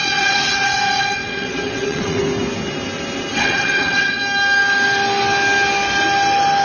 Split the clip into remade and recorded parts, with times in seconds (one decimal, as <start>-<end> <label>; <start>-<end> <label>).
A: 0.0-2.2 remade; 2.2-3.3 recorded; 3.3-4.2 remade; 4.2-6.6 recorded